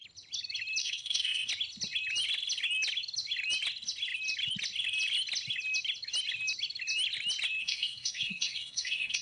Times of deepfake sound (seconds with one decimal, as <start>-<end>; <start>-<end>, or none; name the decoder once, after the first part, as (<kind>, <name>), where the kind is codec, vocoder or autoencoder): 0.8-1.5 (codec, SNAC); 7.6-9.2